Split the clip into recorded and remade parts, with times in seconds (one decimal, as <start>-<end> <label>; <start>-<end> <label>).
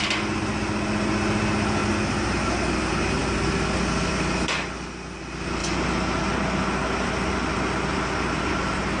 0.0-9.0 recorded